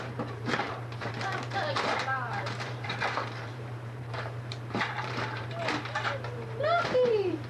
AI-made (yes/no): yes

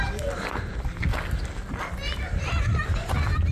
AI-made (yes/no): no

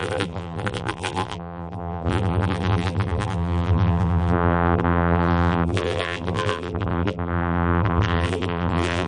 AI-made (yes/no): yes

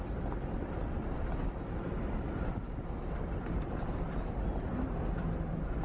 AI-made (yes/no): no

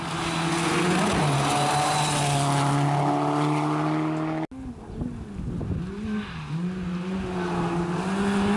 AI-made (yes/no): no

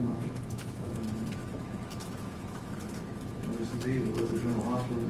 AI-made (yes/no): yes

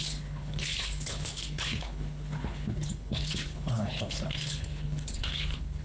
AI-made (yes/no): yes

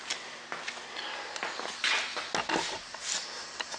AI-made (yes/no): no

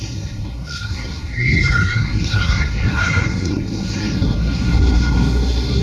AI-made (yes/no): yes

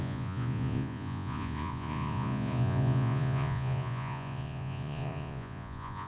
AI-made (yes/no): yes